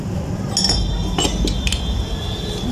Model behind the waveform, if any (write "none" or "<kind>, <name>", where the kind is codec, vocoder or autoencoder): none